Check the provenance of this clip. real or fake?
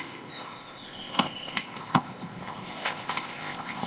fake